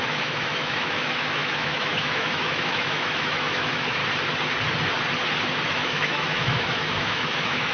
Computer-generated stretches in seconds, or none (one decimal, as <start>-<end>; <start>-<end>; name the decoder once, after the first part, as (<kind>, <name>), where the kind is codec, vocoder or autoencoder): 0.0-4.0 (autoencoder, DAC-VAE); 5.7-7.7